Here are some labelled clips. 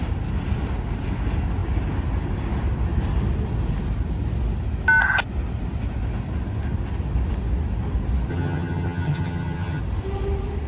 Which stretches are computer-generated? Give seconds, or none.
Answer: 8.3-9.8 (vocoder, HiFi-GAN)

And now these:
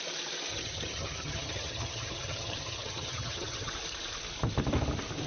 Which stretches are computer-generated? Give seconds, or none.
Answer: 0.5-3.7 (vocoder, HiFi-GAN)

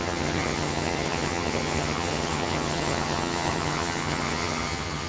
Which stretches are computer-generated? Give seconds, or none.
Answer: 0.0-5.1 (vocoder, HiFi-GAN)

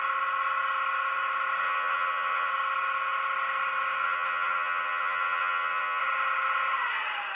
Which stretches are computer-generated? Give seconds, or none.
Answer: 1.6-2.5 (vocoder, HiFi-GAN); 4.0-6.0

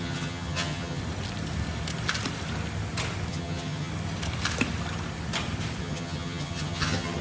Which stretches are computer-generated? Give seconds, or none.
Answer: 0.0-1.0 (vocoder, HiFi-GAN); 3.3-3.9; 5.8-7.2

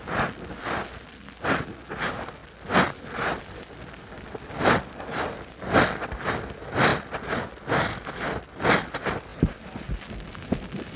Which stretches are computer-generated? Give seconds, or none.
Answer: none

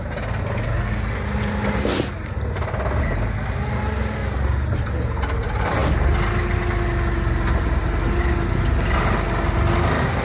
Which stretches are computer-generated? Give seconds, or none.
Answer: none